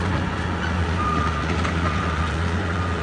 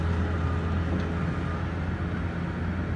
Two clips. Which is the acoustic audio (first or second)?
second